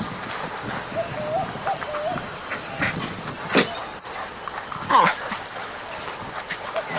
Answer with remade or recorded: recorded